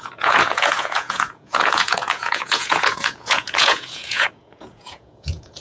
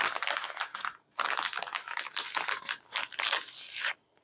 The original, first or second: second